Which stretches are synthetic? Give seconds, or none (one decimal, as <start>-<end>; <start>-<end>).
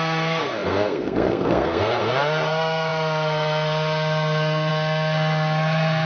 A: 0.0-6.1